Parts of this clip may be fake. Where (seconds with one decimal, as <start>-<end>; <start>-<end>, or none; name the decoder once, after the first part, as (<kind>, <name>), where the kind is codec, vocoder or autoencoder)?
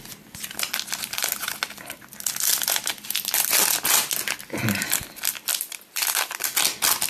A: none